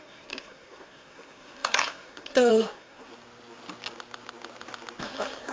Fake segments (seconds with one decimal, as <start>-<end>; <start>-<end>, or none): 0.0-3.1; 5.0-5.5